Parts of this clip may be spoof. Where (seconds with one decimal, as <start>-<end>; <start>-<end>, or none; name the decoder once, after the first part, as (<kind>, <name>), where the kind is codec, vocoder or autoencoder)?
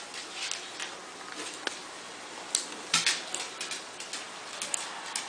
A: none